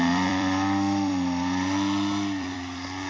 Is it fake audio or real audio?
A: fake